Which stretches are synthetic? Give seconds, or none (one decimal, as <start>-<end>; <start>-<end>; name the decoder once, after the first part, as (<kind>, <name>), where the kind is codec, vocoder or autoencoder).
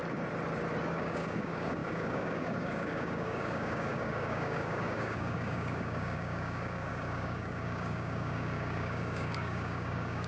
0.8-10.3 (codec, DAC)